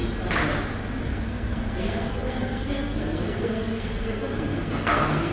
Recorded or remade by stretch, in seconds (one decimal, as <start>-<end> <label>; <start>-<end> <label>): 0.0-1.0 recorded; 1.0-5.3 remade